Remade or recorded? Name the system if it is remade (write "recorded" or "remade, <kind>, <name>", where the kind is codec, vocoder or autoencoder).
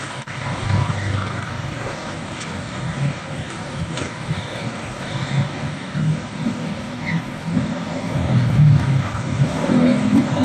remade, codec, DAC